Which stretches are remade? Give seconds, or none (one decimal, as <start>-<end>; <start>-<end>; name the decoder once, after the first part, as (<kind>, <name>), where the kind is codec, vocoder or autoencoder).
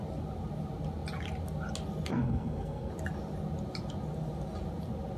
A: 2.1-2.9 (codec, SNAC)